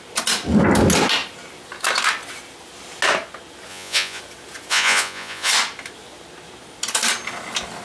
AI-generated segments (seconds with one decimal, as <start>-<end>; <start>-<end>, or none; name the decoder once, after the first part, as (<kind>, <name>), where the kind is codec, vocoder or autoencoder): 3.7-4.2 (vocoder, Vocos); 4.7-5.5